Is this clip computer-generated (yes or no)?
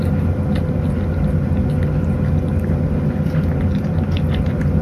no